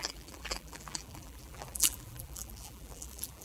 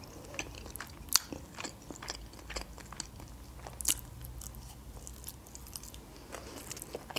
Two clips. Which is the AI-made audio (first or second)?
first